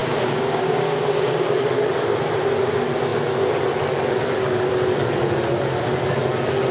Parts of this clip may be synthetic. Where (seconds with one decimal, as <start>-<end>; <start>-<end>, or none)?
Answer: 0.0-1.5

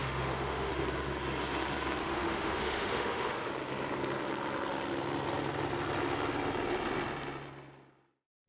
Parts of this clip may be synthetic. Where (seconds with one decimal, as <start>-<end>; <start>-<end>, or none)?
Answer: 0.0-0.7; 2.0-3.5

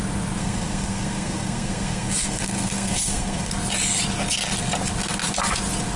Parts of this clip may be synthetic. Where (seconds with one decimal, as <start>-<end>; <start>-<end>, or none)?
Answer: 0.4-3.5

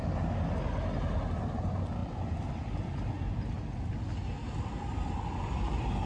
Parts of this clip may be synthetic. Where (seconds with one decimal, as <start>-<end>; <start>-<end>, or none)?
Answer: none

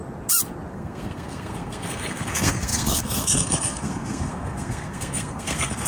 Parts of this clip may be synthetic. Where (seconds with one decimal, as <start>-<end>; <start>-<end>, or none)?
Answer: 0.7-5.9

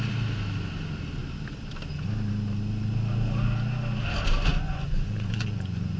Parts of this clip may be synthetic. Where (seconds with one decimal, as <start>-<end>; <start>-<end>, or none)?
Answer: 4.5-6.0

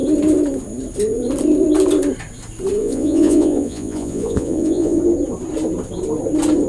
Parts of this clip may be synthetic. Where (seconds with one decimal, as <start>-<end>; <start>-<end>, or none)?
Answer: 2.8-5.0